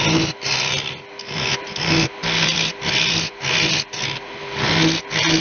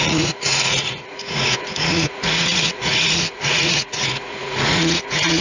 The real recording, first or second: first